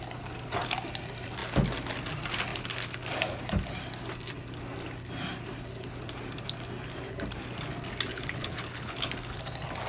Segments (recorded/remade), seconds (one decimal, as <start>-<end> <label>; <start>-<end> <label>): 0.0-8.1 recorded; 8.1-9.1 remade; 9.1-9.9 recorded